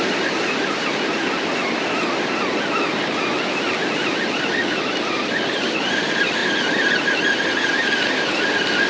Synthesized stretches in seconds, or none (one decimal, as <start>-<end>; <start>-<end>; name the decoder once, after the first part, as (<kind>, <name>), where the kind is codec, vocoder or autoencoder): none